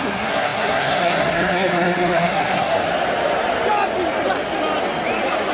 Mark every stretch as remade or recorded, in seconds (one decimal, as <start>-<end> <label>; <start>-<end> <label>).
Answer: 0.0-2.8 remade; 2.8-5.5 recorded

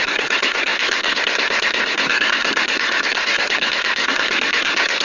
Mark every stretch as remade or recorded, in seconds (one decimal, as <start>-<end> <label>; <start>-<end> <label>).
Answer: 0.0-5.0 remade